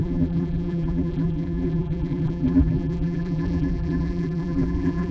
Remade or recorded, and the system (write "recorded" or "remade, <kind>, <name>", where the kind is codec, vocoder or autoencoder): remade, vocoder, BigVGAN v2